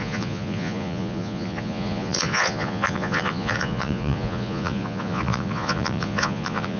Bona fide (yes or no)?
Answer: no